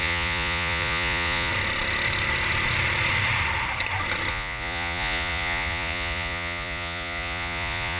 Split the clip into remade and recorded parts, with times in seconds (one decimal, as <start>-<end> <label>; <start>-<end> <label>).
0.0-1.5 remade; 1.5-4.3 recorded; 4.3-8.0 remade